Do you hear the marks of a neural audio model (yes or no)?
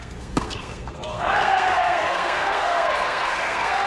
yes